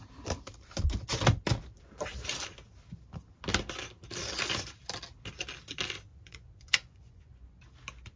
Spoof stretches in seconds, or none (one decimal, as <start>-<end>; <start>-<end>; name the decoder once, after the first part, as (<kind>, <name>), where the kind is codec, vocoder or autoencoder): 6.1-7.5 (vocoder, Vocos)